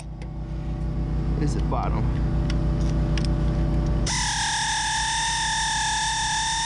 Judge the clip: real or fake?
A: real